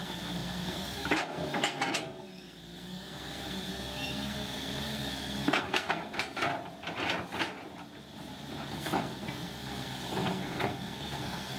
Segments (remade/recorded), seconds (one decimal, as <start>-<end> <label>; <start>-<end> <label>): 0.0-6.5 remade; 6.5-8.7 recorded; 8.7-11.6 remade